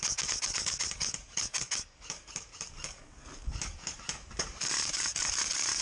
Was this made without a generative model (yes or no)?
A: no